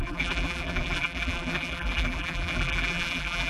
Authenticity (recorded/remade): remade